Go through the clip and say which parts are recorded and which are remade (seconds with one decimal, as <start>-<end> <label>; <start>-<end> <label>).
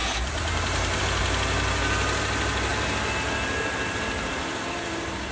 0.0-5.3 recorded